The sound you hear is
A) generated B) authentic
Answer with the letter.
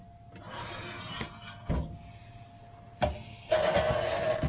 B